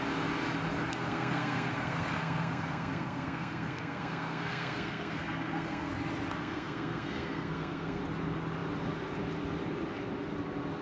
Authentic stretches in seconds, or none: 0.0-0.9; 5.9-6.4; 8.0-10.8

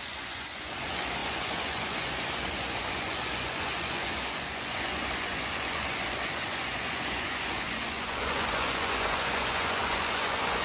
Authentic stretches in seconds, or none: none

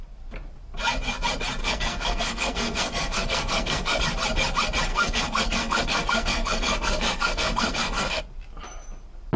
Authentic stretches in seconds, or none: 0.0-1.6; 4.0-4.9; 8.2-9.4